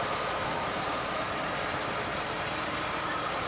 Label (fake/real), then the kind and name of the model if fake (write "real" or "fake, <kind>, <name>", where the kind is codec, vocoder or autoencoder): fake, vocoder, BigVGAN v2